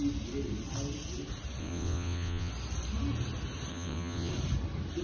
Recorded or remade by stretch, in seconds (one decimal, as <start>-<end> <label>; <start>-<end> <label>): 0.0-1.6 recorded; 1.6-2.5 remade; 2.5-3.7 recorded; 3.7-4.3 remade; 4.3-5.0 recorded